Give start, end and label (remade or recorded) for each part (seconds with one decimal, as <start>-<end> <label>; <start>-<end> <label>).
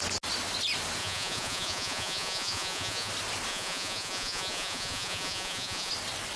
0.0-1.0 recorded; 1.0-3.1 remade; 3.1-3.5 recorded; 3.5-5.9 remade; 5.9-6.4 recorded